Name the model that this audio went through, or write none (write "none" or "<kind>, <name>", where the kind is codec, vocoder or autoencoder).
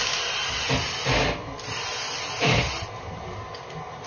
none